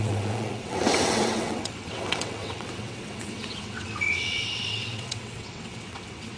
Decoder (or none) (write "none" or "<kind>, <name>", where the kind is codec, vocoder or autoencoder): vocoder, WaveNeXt